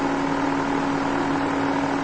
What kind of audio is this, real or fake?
real